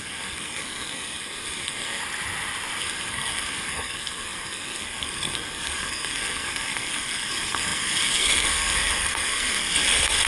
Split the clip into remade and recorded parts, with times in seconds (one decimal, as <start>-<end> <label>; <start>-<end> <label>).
0.0-2.0 remade; 2.0-2.8 recorded; 2.8-10.3 remade